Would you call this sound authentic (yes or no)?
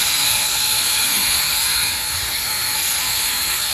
no